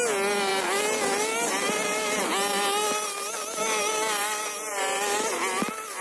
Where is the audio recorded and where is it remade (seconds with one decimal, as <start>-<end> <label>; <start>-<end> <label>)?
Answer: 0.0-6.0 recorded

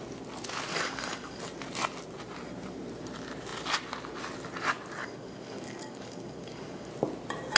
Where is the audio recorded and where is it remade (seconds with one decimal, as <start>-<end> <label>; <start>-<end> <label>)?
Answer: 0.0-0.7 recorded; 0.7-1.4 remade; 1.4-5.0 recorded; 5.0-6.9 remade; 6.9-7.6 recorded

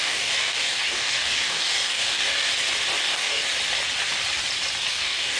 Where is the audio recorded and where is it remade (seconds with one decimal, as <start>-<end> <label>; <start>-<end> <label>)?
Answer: 0.0-2.5 remade; 2.5-3.0 recorded; 3.0-3.4 remade; 3.4-4.9 recorded; 4.9-5.4 remade